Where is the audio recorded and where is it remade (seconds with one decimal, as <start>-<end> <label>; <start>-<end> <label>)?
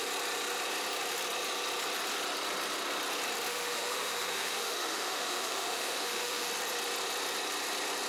0.0-3.5 recorded; 3.5-6.5 remade; 6.5-8.1 recorded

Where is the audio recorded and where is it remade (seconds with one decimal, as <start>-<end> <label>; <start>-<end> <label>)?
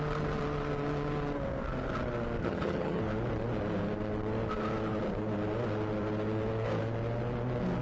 0.0-2.4 recorded; 2.4-3.0 remade; 3.0-7.8 recorded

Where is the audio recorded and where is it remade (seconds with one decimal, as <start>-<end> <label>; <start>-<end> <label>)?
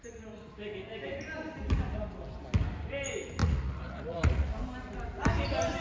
0.0-3.4 recorded; 3.4-4.5 remade; 4.5-5.8 recorded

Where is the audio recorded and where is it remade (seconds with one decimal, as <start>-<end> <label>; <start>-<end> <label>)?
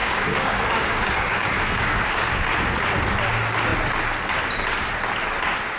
0.0-2.3 remade; 2.3-5.8 recorded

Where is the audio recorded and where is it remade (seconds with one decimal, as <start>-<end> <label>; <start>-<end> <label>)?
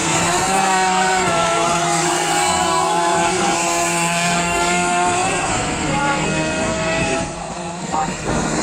0.0-8.6 remade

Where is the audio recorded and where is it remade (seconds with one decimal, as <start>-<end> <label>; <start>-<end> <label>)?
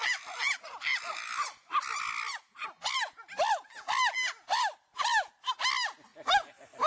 0.0-6.9 recorded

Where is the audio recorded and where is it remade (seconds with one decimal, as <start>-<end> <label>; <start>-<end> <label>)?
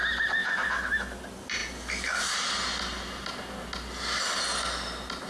0.0-0.4 recorded; 0.4-1.2 remade; 1.2-5.3 recorded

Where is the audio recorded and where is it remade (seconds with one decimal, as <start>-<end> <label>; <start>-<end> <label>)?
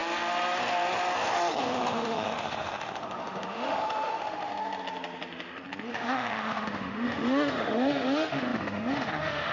0.0-1.6 recorded; 1.6-4.5 remade; 4.5-5.9 recorded; 5.9-9.5 remade